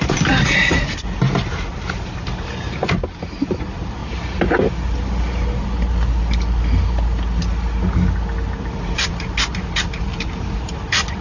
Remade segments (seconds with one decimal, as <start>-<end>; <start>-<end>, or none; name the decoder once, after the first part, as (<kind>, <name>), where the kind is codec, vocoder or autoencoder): 0.0-4.0 (vocoder, BigVGAN v2); 8.6-11.2